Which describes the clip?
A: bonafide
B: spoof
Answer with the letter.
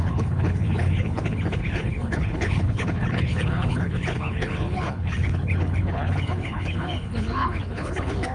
B